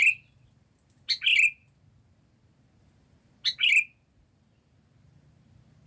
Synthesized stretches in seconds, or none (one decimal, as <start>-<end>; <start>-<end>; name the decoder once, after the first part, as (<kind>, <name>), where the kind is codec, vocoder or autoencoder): none